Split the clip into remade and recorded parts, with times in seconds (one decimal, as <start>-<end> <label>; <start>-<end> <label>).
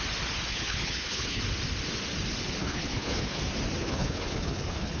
0.0-0.5 recorded; 0.5-1.4 remade; 1.4-2.6 recorded; 2.6-3.4 remade; 3.4-3.8 recorded; 3.8-5.0 remade